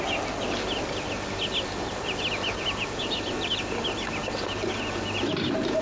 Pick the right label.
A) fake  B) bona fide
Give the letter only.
B